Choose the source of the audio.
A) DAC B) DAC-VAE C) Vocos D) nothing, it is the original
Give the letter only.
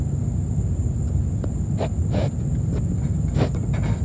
D